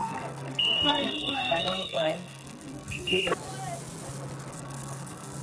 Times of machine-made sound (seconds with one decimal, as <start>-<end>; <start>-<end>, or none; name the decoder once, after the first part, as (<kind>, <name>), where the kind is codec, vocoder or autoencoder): 0.0-3.2 (codec, SNAC); 4.5-5.4